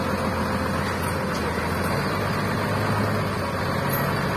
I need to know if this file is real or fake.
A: real